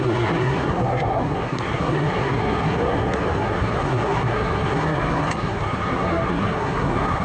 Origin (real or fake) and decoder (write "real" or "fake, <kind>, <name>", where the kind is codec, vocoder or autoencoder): fake, codec, SNAC